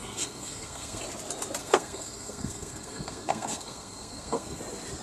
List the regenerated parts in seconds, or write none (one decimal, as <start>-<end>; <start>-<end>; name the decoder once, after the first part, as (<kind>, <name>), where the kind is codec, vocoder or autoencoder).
0.0-1.0 (codec, SNAC); 1.6-4.6